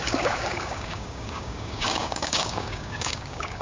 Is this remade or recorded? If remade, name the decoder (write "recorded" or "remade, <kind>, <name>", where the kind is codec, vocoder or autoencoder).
remade, codec, DAC